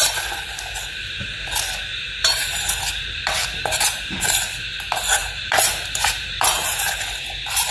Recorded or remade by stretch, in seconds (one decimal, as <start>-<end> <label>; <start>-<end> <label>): 0.0-1.9 recorded; 1.9-2.6 remade; 2.6-3.6 recorded; 3.6-4.4 remade; 4.4-5.2 recorded; 5.2-7.0 remade; 7.0-7.7 recorded